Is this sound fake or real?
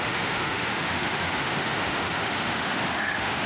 fake